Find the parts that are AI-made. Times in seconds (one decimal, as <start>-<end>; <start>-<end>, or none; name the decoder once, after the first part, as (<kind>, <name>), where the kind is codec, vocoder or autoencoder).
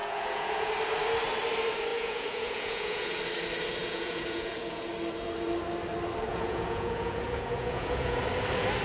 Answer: 0.0-0.7 (vocoder, Vocos); 1.9-3.2; 3.8-4.9; 6.3-8.2